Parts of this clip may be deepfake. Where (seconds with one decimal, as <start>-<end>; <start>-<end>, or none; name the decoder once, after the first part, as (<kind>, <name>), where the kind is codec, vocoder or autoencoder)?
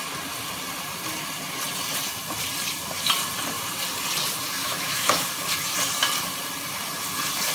4.6-5.3 (autoencoder, DAC-VAE)